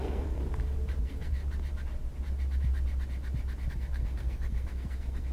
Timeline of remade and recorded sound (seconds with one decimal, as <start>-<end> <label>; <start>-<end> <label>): 0.0-0.4 remade; 0.4-1.0 recorded; 1.0-1.4 remade; 1.4-3.7 recorded; 3.7-5.3 remade